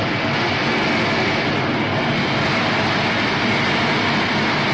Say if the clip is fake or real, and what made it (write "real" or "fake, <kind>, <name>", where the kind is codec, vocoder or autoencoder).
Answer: real